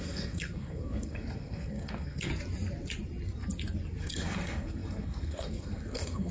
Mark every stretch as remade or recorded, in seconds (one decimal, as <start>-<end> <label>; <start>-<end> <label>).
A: 0.0-2.3 remade; 2.3-4.0 recorded; 4.0-6.3 remade